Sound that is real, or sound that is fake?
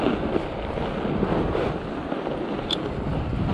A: real